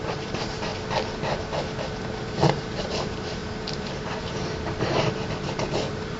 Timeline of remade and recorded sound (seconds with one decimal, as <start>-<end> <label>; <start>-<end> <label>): 0.0-0.7 remade; 0.7-2.0 recorded; 2.0-6.2 remade